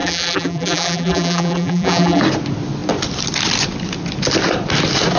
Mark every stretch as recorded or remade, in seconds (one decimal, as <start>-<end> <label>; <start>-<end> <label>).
0.0-2.2 remade; 2.2-5.2 recorded